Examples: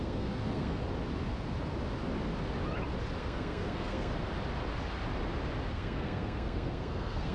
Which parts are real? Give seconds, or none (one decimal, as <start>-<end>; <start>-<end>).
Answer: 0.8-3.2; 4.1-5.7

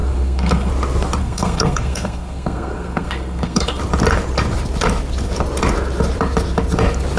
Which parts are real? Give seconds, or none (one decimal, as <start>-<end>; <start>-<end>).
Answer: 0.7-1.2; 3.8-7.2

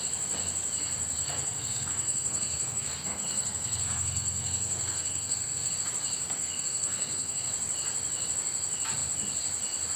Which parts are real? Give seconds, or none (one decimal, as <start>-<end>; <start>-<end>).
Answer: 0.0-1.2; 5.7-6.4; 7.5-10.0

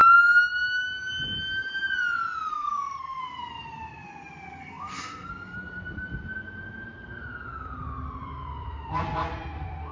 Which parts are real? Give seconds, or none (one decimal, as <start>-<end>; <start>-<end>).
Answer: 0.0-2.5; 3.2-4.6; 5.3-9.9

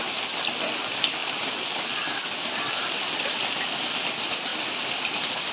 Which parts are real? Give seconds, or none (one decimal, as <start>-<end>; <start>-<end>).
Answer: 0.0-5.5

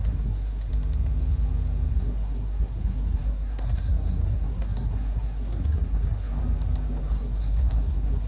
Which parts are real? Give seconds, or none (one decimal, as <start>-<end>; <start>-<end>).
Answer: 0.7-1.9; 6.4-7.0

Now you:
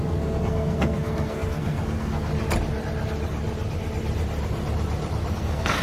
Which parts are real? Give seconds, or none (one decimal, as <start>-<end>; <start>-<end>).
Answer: 2.3-5.3

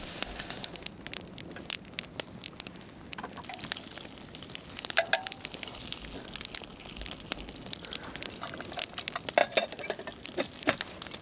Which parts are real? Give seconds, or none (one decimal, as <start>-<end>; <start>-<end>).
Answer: 0.0-11.2